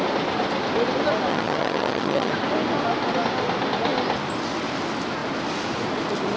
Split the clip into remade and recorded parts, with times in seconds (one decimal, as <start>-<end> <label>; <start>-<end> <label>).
0.0-1.3 recorded; 1.3-2.3 remade; 2.3-6.4 recorded

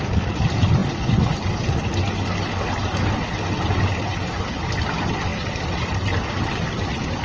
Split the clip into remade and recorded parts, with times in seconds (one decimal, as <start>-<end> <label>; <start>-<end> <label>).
0.0-7.2 recorded

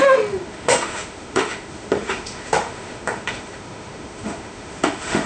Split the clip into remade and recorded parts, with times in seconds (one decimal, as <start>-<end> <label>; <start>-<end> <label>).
0.0-5.3 remade

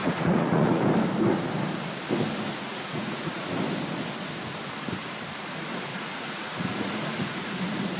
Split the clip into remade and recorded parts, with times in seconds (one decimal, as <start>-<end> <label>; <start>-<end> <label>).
0.0-0.8 remade; 0.8-2.5 recorded; 2.5-3.6 remade; 3.6-5.9 recorded; 5.9-7.6 remade; 7.6-8.0 recorded

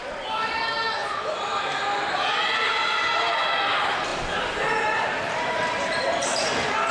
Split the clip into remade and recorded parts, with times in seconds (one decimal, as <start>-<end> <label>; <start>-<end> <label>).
0.0-0.6 remade; 0.6-1.0 recorded; 1.0-1.6 remade; 1.6-2.5 recorded; 2.5-3.3 remade; 3.3-4.1 recorded; 4.1-6.5 remade; 6.5-6.9 recorded

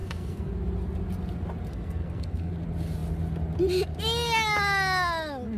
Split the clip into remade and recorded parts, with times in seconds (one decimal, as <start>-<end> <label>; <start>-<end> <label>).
0.0-0.5 remade; 0.5-1.7 recorded; 1.7-2.5 remade; 2.5-5.6 recorded

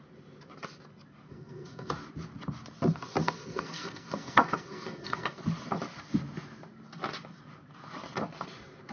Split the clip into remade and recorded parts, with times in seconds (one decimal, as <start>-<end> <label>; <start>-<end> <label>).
0.0-1.3 recorded; 1.3-1.9 remade; 1.9-3.2 recorded; 3.2-5.4 remade; 5.4-8.9 recorded

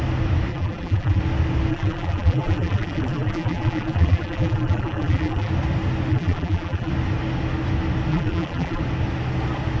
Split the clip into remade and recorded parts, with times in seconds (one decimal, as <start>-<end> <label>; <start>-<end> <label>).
0.0-0.5 recorded; 0.5-1.2 remade; 1.2-1.7 recorded; 1.7-5.5 remade; 5.5-6.1 recorded; 6.1-6.9 remade; 6.9-8.1 recorded; 8.1-8.8 remade; 8.8-9.8 recorded